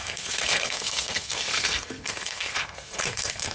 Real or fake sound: fake